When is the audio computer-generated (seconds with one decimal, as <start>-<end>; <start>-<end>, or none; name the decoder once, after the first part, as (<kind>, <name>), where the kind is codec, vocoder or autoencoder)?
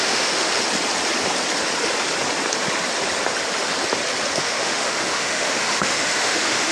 0.0-0.5 (autoencoder, DAC-VAE); 4.4-6.7